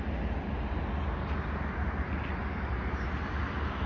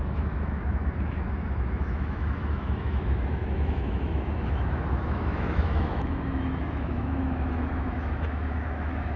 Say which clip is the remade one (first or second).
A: second